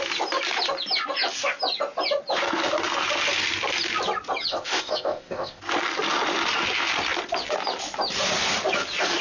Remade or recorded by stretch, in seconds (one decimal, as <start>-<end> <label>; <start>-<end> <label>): 0.0-4.5 recorded; 4.5-5.6 remade; 5.6-9.2 recorded